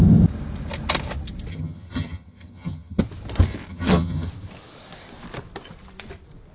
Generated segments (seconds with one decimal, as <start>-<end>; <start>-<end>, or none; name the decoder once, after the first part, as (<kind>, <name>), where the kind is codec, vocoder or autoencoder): 1.5-3.0 (vocoder, HiFi-GAN); 3.7-4.3